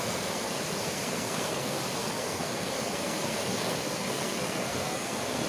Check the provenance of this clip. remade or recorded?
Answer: remade